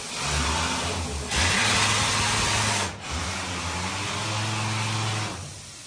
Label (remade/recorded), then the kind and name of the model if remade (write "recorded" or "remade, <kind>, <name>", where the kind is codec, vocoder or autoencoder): recorded